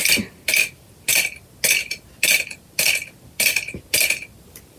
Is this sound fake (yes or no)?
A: yes